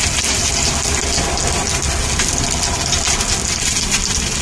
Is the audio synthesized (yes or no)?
no